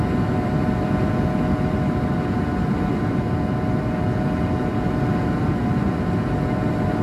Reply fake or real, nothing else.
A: real